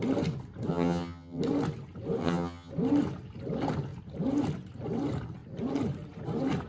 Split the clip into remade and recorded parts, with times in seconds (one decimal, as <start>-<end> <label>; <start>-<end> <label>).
0.0-0.7 recorded; 0.7-1.4 remade; 1.4-2.2 recorded; 2.2-2.7 remade; 2.7-6.7 recorded